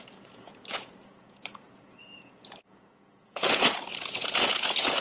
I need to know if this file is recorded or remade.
remade